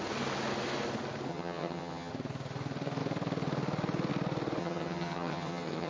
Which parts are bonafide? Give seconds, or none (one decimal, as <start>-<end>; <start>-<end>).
0.0-1.3; 2.1-4.6